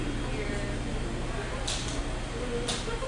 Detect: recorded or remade recorded